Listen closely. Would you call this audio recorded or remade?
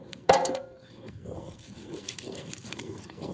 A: remade